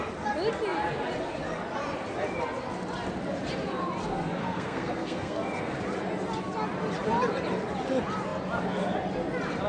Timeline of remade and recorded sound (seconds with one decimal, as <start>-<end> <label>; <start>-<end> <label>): 0.0-4.4 recorded; 4.4-5.7 remade; 5.7-9.7 recorded